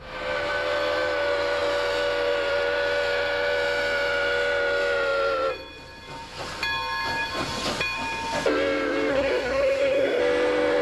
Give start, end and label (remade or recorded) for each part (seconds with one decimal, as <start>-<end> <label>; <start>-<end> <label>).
0.0-9.1 recorded; 9.1-10.2 remade; 10.2-10.8 recorded